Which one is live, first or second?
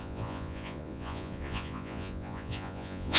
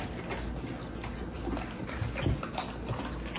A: second